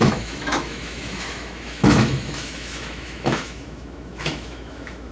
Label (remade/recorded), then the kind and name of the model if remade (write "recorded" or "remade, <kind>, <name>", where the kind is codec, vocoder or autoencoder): remade, autoencoder, DAC-VAE